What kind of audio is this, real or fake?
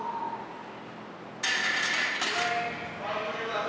real